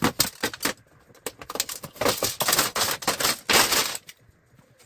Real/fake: real